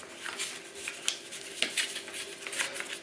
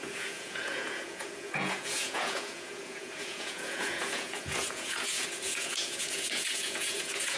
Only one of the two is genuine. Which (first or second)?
first